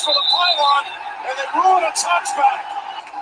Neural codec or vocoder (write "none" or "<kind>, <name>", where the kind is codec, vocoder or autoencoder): none